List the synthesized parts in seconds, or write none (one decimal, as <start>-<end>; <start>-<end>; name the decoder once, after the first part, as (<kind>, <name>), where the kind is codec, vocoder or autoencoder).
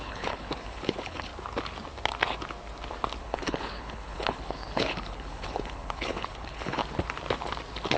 0.0-1.3 (codec, HILCodec); 3.2-6.8